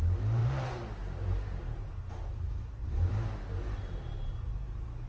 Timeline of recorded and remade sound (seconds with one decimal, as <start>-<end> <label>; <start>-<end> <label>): 0.0-0.4 recorded; 0.4-1.9 remade; 1.9-2.8 recorded; 2.8-5.1 remade